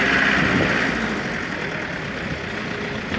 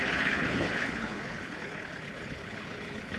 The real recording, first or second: first